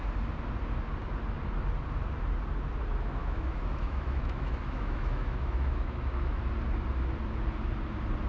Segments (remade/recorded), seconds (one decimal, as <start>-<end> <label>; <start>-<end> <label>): 0.0-3.2 recorded; 3.2-6.4 remade; 6.4-8.3 recorded